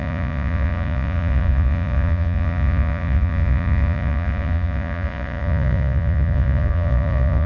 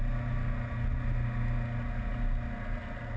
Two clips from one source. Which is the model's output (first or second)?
first